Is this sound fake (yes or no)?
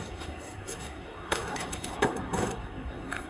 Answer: yes